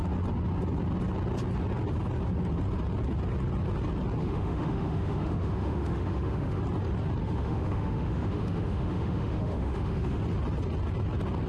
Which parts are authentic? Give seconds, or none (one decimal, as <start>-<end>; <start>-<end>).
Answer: 0.0-4.2; 6.6-7.2; 10.2-11.5